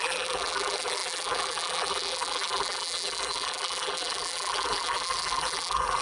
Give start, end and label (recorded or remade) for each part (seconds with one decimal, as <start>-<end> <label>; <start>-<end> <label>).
0.0-6.0 remade